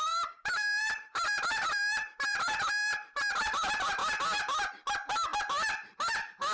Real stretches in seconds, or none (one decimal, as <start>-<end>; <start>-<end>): 2.9-3.4; 4.0-4.7; 5.3-6.1